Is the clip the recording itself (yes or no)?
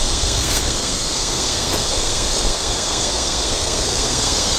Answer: no